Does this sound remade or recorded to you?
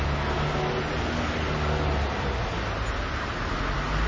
recorded